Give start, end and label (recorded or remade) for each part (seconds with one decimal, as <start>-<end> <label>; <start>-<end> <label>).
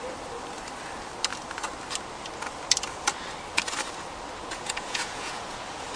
0.0-4.4 recorded; 4.4-5.6 remade; 5.6-6.0 recorded